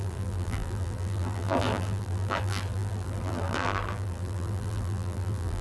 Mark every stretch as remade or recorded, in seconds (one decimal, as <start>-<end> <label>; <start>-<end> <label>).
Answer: 0.0-5.6 remade